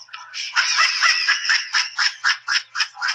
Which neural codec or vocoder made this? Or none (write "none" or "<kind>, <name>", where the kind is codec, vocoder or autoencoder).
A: vocoder, WaveNeXt